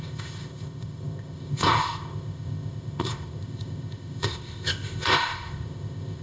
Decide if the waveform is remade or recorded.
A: remade